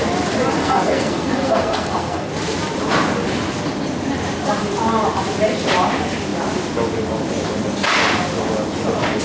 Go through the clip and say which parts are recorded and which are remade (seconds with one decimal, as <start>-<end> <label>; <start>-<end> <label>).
0.0-0.6 recorded; 0.6-2.3 remade; 2.3-9.2 recorded